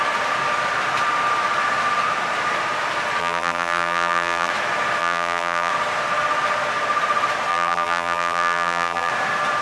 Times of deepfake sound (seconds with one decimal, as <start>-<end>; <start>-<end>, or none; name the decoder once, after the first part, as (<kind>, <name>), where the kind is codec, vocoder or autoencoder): 3.2-4.5 (vocoder, BigVGAN v2); 5.0-5.7; 7.5-9.1